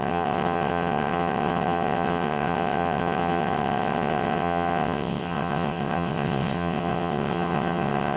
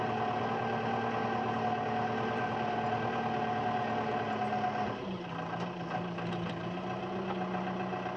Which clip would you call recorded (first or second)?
second